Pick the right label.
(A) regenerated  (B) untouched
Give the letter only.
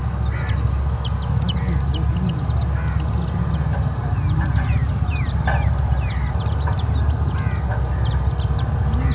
B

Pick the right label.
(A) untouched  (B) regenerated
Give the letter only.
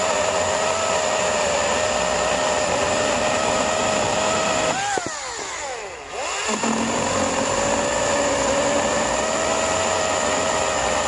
A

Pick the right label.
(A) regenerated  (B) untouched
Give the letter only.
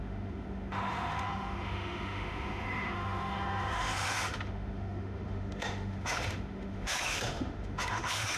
A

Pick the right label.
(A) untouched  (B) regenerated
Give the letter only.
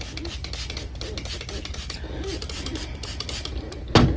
A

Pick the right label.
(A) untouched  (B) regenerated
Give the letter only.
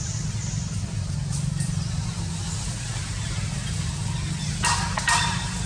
A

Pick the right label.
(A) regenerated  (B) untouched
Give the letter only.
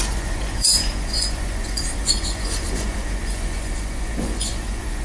A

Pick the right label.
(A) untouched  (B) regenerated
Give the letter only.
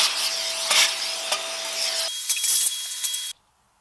A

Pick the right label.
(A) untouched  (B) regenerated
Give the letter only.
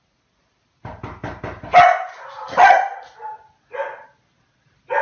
A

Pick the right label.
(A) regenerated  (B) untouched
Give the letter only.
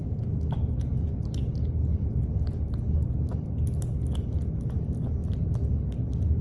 B